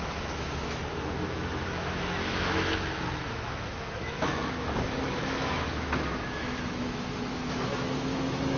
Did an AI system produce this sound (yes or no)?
yes